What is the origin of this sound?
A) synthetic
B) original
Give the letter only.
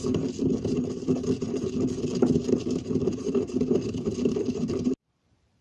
A